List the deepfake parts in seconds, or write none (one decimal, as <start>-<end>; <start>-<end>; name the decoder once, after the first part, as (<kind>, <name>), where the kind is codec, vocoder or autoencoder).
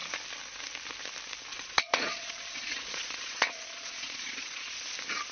1.5-4.7 (vocoder, Vocos)